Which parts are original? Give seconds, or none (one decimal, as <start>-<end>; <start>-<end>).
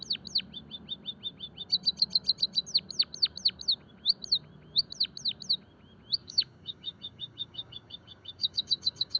0.0-6.2